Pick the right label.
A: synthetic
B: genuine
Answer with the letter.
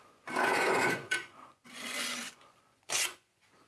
A